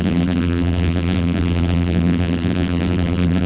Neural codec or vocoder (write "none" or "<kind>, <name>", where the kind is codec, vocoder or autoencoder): vocoder, BigVGAN v2